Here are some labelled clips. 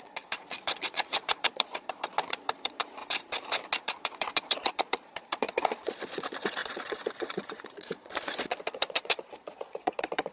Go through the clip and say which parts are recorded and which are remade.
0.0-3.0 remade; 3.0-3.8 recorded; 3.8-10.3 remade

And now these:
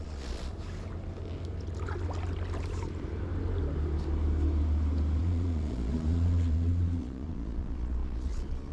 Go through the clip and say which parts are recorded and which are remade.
0.0-0.5 remade; 0.5-5.2 recorded; 5.2-8.7 remade

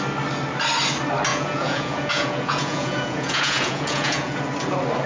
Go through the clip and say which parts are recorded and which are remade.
0.0-1.3 recorded; 1.3-4.4 remade; 4.4-5.1 recorded

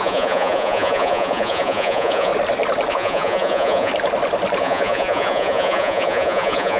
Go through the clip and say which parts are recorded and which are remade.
0.0-2.3 remade; 2.3-2.9 recorded; 2.9-3.9 remade; 3.9-4.6 recorded; 4.6-6.8 remade

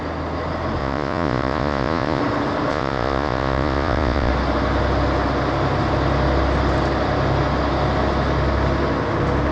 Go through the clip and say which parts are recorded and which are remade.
0.0-0.8 recorded; 0.8-2.2 remade; 2.2-2.7 recorded; 2.7-4.3 remade; 4.3-9.5 recorded

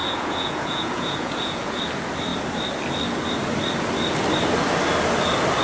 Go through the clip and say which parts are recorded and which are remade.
0.0-1.8 remade; 1.8-5.6 recorded

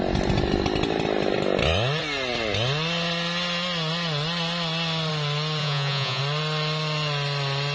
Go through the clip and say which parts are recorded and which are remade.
0.0-5.6 recorded; 5.6-6.2 remade; 6.2-7.7 recorded

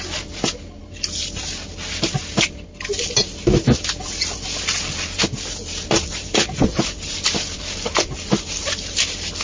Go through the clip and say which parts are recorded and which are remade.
0.0-9.4 recorded